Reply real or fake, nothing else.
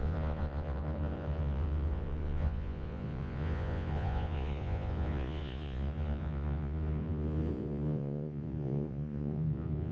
fake